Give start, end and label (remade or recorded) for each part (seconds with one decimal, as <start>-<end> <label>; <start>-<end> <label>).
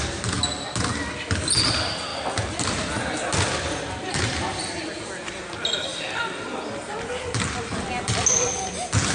0.0-2.1 recorded; 2.1-5.0 remade; 5.0-9.1 recorded